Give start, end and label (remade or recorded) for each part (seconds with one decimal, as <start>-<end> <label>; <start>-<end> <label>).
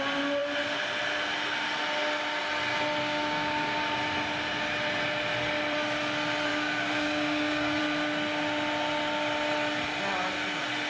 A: 0.0-3.0 recorded; 3.0-3.8 remade; 3.8-6.5 recorded; 6.5-7.8 remade; 7.8-10.9 recorded